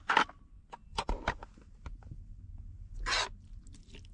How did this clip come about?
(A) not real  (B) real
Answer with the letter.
B